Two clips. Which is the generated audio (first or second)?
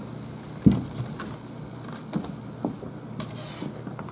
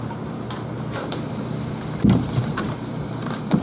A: second